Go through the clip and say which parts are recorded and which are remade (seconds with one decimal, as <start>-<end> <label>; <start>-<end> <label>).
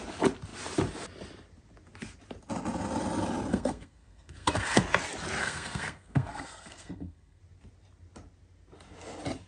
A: 0.0-3.5 recorded; 3.5-4.8 remade; 4.8-5.4 recorded; 5.4-7.4 remade; 7.4-9.5 recorded